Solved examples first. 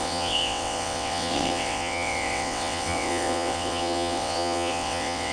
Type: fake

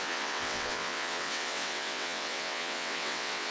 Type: fake